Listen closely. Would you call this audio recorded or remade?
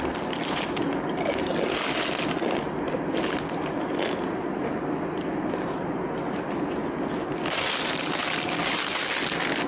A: recorded